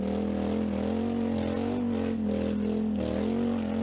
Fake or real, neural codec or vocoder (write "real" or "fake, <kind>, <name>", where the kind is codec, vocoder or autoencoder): real